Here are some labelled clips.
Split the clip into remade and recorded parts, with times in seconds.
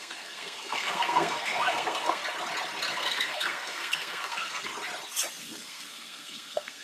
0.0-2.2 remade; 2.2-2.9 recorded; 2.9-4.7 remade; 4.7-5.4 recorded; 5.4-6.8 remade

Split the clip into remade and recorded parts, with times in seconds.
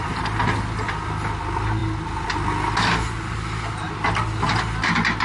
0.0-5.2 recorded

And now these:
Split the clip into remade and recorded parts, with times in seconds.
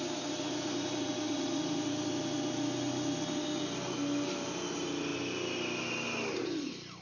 0.0-7.0 recorded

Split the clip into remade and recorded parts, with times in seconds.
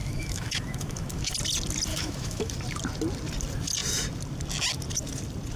0.0-1.3 remade; 1.3-1.9 recorded; 1.9-2.5 remade; 2.5-5.6 recorded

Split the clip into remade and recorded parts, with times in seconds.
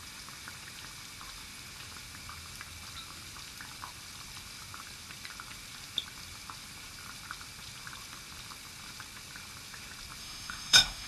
0.0-10.2 recorded; 10.2-11.1 remade